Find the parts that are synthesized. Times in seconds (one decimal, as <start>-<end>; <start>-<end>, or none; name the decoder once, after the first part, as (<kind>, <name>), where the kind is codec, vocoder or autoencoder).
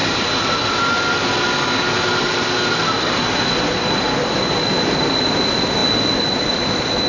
5.8-7.1 (vocoder, BigVGAN v2)